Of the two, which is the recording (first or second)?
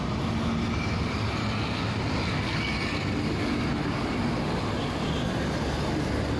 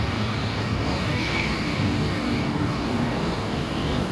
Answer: first